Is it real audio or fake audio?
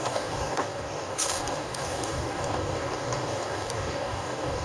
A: fake